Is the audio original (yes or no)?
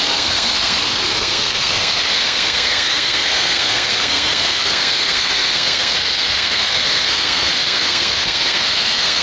no